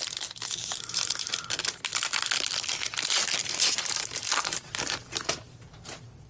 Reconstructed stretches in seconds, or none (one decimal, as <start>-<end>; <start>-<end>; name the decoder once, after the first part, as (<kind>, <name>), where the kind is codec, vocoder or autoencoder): 0.6-1.3 (vocoder, BigVGAN v2); 3.4-6.3

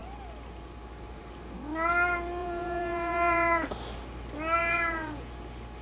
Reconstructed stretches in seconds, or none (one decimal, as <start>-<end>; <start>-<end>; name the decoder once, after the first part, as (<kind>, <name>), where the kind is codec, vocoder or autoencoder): 2.4-3.7 (vocoder, Vocos); 4.6-5.3

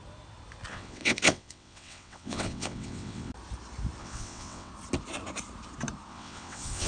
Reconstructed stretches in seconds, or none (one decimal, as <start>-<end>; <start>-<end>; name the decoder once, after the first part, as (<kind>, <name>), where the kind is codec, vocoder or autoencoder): 0.7-3.3 (vocoder, WaveNeXt); 4.0-4.7; 6.1-6.9

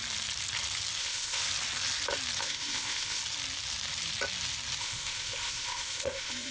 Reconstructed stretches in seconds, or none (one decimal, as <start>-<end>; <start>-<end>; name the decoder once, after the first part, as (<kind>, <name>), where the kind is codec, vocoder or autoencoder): 1.0-1.4 (codec, ZipCodec); 2.4-3.2; 4.8-6.5

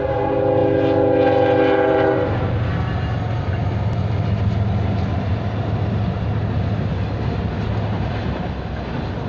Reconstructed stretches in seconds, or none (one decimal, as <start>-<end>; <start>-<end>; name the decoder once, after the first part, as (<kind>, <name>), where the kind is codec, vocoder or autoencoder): none

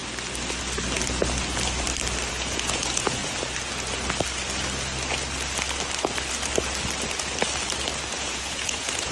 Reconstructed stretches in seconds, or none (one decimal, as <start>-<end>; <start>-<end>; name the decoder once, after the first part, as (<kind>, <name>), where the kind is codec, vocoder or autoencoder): 2.3-3.2 (vocoder, Vocos); 8.2-9.1